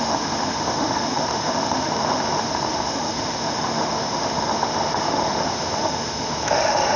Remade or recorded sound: remade